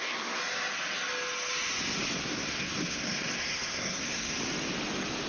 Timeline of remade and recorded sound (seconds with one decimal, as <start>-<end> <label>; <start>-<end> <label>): 0.0-0.4 remade; 0.4-2.2 recorded; 2.2-4.3 remade; 4.3-5.3 recorded